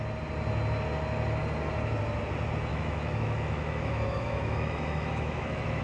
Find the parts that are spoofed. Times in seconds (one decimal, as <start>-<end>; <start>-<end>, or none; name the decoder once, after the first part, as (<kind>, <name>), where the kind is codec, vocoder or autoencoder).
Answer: 2.7-5.8 (autoencoder, DAC-VAE)

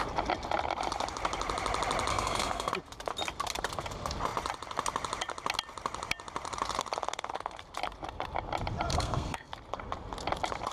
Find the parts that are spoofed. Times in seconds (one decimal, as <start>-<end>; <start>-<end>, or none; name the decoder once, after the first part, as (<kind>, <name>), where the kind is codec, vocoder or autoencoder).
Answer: 2.1-2.7 (codec, SNAC); 8.9-9.5

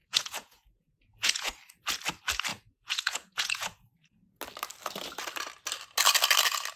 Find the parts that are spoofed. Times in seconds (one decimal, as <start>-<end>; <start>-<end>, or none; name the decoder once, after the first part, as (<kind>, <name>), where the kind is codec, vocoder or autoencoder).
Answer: 0.0-1.5 (vocoder, Vocos); 2.5-4.4

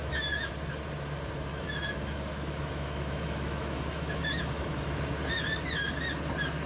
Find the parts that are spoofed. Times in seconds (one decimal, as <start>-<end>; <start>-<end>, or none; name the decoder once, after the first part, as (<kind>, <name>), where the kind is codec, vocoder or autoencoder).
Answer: 0.0-0.5 (autoencoder, DAC-VAE); 1.5-5.0

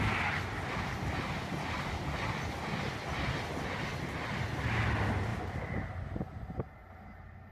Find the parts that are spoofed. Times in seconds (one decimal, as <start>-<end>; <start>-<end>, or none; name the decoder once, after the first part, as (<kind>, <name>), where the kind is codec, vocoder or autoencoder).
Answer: none

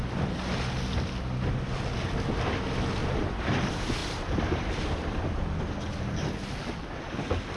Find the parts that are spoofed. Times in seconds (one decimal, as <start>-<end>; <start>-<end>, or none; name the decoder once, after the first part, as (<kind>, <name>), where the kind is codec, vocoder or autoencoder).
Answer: 3.0-3.6 (vocoder, BigVGAN v2); 4.0-4.8

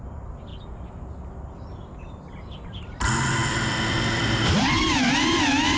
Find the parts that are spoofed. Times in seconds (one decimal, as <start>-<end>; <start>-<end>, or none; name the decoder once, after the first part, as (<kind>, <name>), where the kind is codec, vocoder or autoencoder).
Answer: none